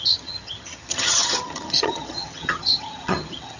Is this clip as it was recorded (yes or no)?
no